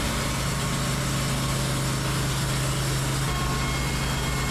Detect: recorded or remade recorded